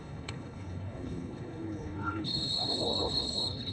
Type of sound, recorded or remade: remade